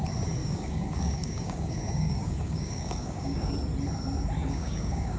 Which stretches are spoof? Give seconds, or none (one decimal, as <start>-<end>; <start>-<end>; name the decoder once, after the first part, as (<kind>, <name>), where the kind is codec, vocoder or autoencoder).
0.4-3.5 (codec, DAC); 4.4-5.2